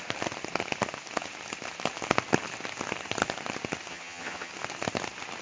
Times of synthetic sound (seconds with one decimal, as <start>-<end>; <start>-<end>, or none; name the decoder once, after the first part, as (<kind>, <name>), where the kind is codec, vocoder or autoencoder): 3.9-4.5 (vocoder, HiFi-GAN)